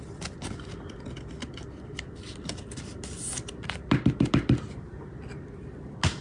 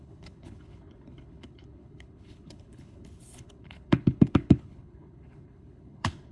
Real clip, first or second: first